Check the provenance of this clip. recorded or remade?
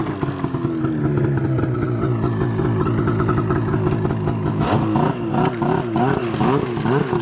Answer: recorded